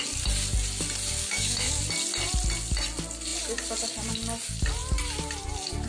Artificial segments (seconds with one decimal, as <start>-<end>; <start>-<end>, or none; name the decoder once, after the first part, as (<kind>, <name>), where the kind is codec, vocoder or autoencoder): 1.2-1.8 (codec, DAC)